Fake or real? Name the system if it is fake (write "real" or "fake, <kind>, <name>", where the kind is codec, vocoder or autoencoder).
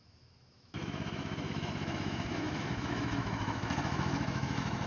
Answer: fake, autoencoder, DAC-VAE